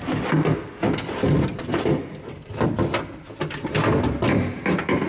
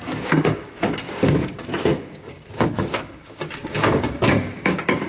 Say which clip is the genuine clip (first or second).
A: first